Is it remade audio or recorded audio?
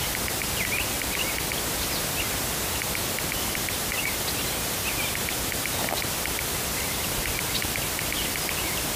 recorded